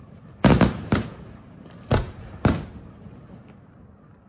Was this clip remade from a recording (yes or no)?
no